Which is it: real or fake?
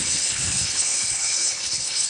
fake